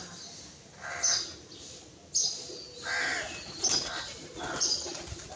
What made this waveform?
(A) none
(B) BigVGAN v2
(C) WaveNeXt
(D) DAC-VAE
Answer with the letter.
A